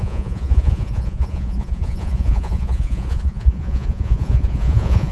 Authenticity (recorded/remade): remade